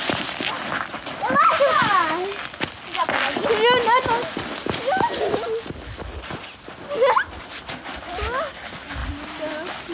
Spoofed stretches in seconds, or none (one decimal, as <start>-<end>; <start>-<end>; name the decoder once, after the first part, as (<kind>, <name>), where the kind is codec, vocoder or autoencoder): 9.0-9.9 (vocoder, BigVGAN v2)